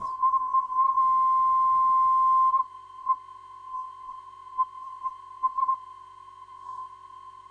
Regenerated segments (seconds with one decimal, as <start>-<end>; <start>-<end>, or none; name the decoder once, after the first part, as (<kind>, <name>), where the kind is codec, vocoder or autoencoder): 0.0-1.0 (codec, SNAC); 2.5-7.5